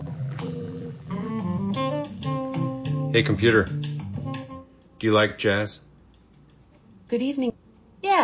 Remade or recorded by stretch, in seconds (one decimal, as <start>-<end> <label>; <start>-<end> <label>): 0.0-1.3 remade; 1.3-8.2 recorded